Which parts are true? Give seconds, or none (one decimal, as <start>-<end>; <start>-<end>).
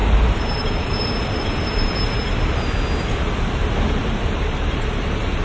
2.2-4.0